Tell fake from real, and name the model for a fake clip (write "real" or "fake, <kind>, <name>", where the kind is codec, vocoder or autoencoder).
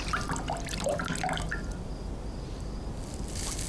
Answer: real